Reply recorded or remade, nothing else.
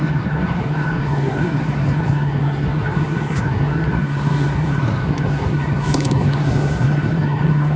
remade